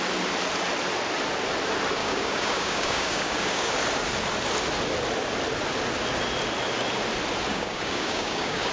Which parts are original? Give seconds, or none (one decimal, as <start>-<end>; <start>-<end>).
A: 0.0-2.0; 3.7-7.5